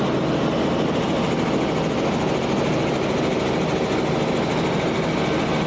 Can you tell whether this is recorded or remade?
recorded